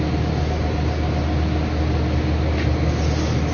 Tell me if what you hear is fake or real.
real